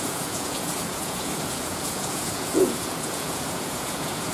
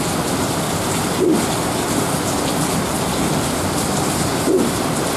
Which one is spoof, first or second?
first